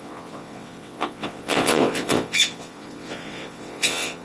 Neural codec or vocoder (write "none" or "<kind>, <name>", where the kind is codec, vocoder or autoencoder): vocoder, WaveNeXt